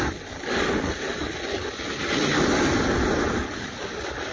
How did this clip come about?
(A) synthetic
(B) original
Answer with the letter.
B